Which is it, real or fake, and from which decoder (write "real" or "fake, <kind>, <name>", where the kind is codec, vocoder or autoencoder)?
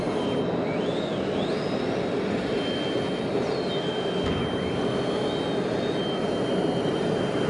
real